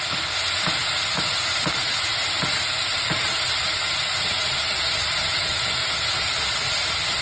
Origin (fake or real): real